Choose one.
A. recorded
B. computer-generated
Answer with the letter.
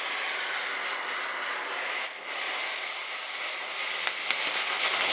A